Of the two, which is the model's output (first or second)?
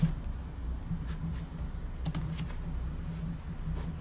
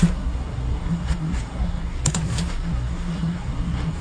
second